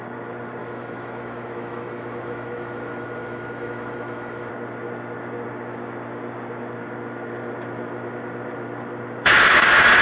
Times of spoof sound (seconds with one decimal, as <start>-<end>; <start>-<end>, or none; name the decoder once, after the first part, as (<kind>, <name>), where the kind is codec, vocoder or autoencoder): 0.6-4.5 (autoencoder, DAC-VAE)